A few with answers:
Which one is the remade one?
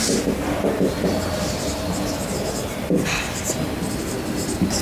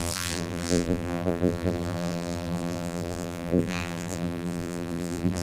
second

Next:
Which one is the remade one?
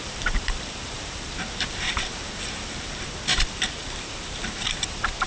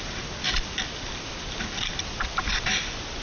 first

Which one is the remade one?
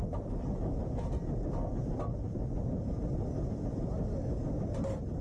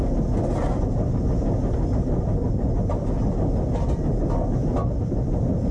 first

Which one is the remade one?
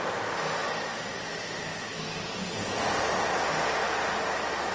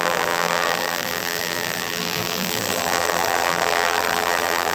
second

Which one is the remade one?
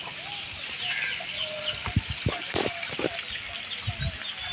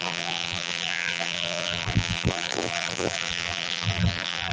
second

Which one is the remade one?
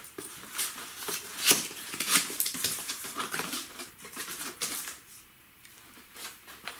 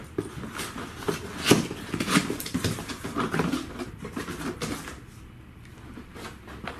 first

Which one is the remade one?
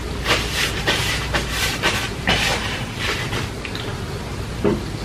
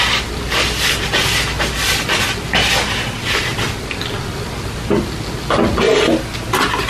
first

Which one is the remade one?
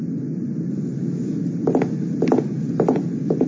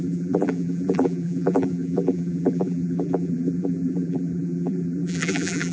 second